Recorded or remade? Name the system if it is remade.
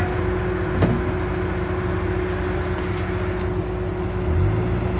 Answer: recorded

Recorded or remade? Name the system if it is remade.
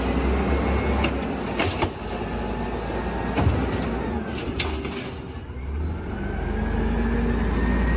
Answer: recorded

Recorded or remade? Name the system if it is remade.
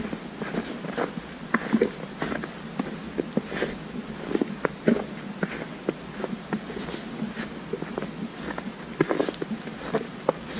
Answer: recorded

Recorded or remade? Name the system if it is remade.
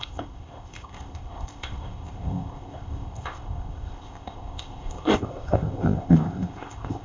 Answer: remade, codec, ZipCodec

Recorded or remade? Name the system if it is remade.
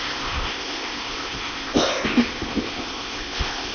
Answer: remade, codec, ZipCodec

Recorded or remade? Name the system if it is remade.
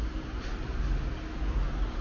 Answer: recorded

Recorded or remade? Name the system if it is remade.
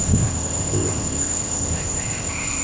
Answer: remade, codec, ZipCodec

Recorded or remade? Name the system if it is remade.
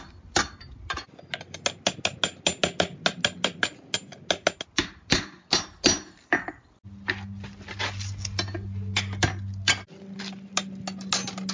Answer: recorded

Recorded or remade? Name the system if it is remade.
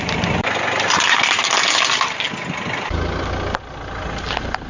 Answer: recorded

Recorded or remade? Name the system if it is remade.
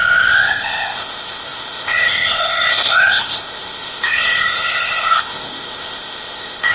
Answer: remade, codec, ZipCodec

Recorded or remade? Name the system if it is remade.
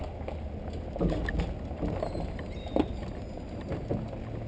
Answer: recorded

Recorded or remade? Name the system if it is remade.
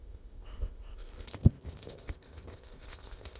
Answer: remade, codec, ZipCodec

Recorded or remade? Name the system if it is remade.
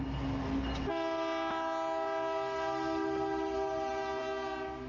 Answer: recorded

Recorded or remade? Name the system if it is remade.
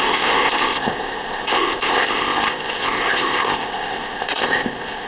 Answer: remade, codec, ZipCodec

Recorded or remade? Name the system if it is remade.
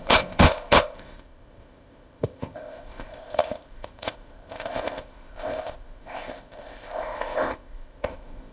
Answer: remade, codec, ZipCodec